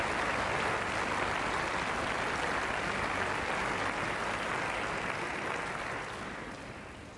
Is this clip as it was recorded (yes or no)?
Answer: yes